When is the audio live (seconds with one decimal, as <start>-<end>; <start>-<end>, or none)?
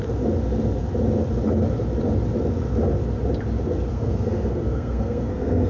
0.0-3.9